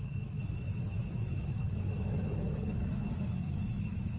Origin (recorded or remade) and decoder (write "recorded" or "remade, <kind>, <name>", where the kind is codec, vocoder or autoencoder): remade, autoencoder, DAC-VAE